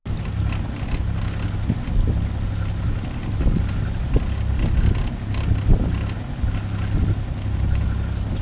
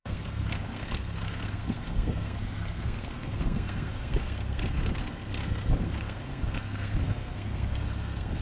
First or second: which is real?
first